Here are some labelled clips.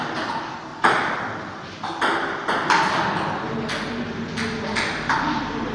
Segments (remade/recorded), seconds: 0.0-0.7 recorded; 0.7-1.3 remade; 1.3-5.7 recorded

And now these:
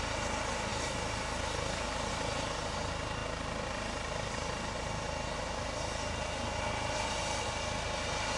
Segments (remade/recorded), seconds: 0.0-8.4 recorded

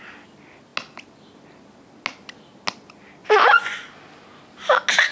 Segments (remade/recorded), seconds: 0.0-3.2 recorded; 3.2-3.9 remade; 3.9-5.1 recorded

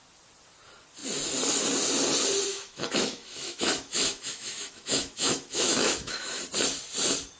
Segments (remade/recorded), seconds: 0.0-2.5 recorded; 2.5-6.4 remade; 6.4-7.4 recorded

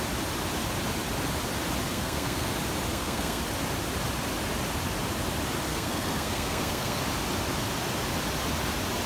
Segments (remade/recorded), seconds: 0.0-1.9 recorded; 1.9-2.5 remade; 2.5-2.9 recorded; 2.9-3.4 remade; 3.4-5.7 recorded; 5.7-7.0 remade; 7.0-9.1 recorded

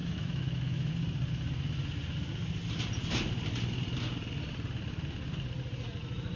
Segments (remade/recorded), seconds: 0.0-0.9 remade; 0.9-6.4 recorded